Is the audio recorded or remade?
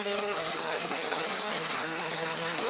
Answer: remade